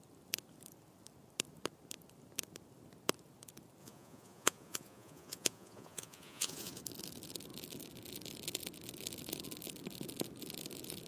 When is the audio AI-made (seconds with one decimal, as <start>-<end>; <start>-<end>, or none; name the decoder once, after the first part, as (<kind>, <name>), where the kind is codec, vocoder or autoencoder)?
3.8-6.8 (vocoder, Vocos)